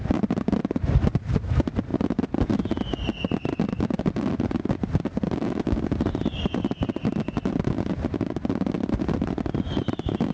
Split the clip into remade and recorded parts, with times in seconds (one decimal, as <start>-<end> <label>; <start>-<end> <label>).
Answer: 0.0-10.3 recorded